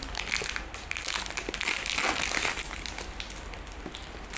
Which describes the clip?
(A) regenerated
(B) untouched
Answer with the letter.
B